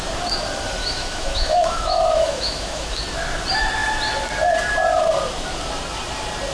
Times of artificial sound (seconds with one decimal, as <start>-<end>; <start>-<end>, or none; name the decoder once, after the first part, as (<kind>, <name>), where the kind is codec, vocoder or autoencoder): 0.8-3.0 (autoencoder, DAC-VAE)